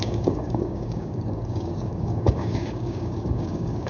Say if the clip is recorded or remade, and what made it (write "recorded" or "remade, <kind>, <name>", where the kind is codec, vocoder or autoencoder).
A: remade, codec, DAC